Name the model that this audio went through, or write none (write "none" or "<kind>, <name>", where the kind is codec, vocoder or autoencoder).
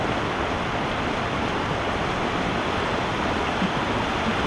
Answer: none